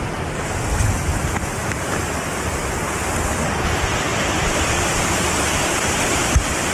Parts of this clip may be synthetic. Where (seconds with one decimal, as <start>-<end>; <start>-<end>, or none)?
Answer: none